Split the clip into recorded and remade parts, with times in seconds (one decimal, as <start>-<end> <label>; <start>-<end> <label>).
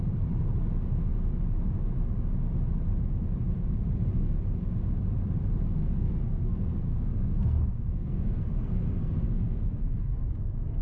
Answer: 0.0-5.8 recorded; 5.8-10.8 remade